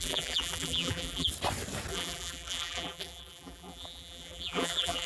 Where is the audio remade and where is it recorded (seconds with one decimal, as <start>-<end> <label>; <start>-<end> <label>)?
0.0-1.3 remade; 1.3-1.9 recorded; 1.9-5.1 remade